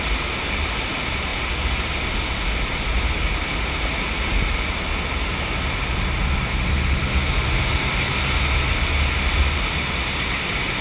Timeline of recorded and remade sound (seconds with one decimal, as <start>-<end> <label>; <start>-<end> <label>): 0.0-10.8 recorded